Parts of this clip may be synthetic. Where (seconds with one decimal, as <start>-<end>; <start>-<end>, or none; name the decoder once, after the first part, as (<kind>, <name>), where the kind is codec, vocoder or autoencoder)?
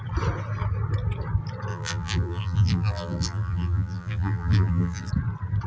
1.7-5.1 (vocoder, BigVGAN v2)